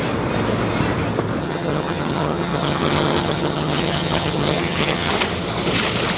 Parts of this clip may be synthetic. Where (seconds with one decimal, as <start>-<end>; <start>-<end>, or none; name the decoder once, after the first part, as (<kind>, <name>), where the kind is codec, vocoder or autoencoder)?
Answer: 1.4-5.1 (vocoder, HiFi-GAN)